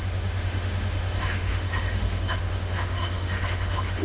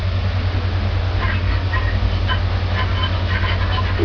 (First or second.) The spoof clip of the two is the first